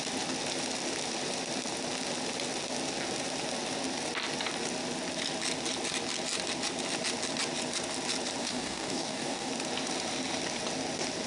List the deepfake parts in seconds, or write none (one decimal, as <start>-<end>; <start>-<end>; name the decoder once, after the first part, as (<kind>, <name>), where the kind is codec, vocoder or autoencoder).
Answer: 8.4-9.5 (codec, DAC)